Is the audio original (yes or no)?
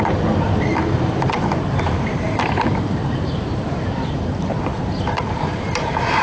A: no